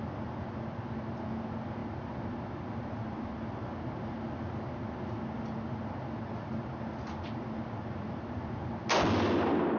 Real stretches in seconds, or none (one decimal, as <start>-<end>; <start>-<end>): 0.0-9.8